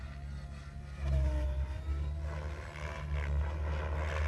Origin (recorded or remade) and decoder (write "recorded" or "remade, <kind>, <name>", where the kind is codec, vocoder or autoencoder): recorded